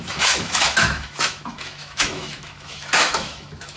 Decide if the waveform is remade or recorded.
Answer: remade